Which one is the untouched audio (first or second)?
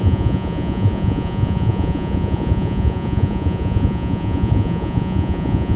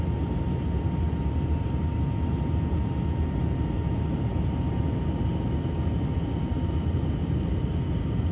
second